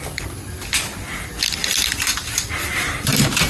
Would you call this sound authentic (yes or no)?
yes